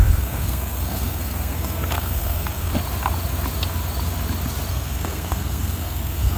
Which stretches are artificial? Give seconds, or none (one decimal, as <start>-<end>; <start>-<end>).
0.0-2.7; 4.7-6.4